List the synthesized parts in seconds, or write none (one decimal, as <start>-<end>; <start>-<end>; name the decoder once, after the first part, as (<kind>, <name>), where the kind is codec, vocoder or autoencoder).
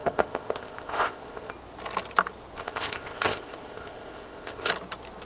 0.0-1.5 (codec, ZipCodec); 2.6-4.7